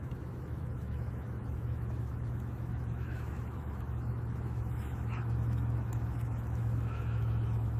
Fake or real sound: fake